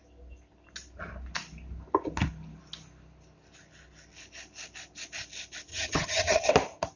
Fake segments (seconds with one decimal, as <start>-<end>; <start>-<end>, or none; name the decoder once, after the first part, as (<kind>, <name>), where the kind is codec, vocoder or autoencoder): 5.7-6.5 (vocoder, HiFi-GAN)